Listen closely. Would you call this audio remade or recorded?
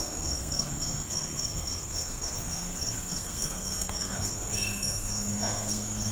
remade